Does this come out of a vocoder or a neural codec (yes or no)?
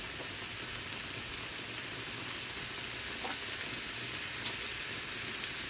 no